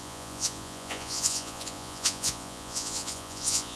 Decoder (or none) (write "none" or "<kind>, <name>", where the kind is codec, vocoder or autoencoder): vocoder, Vocos